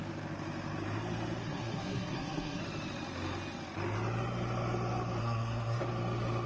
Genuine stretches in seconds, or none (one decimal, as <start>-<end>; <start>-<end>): 0.0-1.4; 2.6-5.2; 5.8-6.5